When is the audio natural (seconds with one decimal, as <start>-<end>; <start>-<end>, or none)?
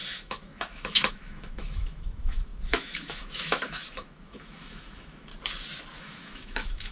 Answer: 5.3-6.0